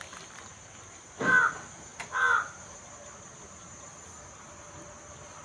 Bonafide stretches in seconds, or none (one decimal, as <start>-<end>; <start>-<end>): 0.0-5.4